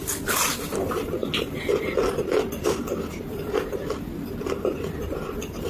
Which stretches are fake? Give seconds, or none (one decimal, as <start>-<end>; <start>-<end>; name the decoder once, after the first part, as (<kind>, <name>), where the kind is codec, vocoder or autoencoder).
none